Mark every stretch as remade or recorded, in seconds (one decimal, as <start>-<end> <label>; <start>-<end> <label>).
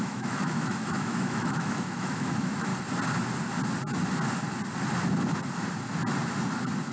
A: 0.0-2.7 remade; 2.7-6.9 recorded